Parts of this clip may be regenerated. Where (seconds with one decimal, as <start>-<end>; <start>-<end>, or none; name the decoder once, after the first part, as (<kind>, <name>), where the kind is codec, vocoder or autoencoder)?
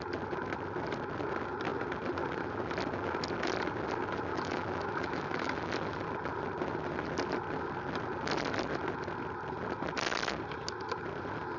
4.3-5.7 (autoencoder, DAC-VAE)